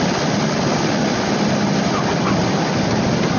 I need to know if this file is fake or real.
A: real